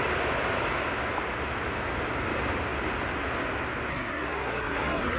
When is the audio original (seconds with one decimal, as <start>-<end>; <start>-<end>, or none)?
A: 0.0-3.9